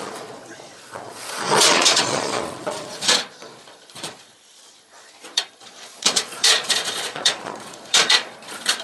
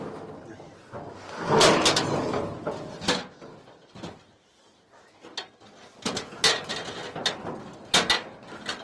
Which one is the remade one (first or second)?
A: first